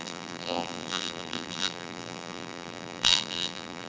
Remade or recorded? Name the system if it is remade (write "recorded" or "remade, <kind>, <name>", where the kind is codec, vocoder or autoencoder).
remade, vocoder, BigVGAN v2